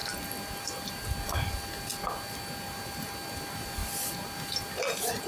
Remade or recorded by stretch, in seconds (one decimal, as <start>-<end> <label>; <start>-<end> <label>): 0.0-5.3 recorded